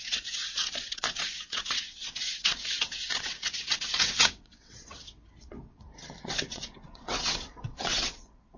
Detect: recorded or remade remade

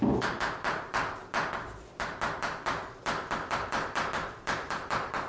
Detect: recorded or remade recorded